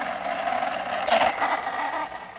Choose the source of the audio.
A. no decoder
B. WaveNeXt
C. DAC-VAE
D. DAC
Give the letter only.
A